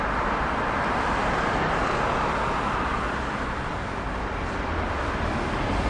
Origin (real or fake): fake